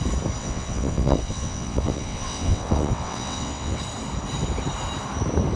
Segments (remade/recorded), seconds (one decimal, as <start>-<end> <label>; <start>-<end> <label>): 0.0-0.4 recorded; 0.4-3.8 remade; 3.8-5.6 recorded